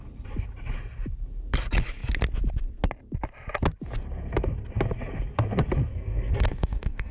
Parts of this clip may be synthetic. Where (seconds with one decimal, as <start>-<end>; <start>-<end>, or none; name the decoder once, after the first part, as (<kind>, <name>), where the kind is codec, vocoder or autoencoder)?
5.9-7.1 (codec, SNAC)

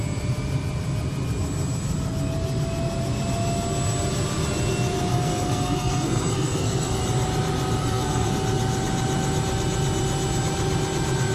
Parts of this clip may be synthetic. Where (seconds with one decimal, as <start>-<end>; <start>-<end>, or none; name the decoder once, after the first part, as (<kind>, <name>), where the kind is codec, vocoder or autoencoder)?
5.1-7.0 (codec, SNAC); 7.8-8.3